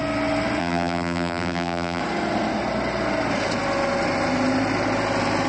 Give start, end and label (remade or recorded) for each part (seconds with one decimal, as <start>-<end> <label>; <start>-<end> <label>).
0.0-0.6 recorded; 0.6-2.0 remade; 2.0-5.5 recorded